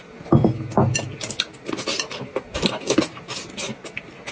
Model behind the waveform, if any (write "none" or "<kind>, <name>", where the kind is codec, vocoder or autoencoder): none